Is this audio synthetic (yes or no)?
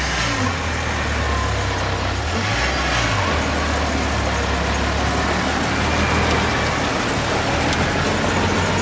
no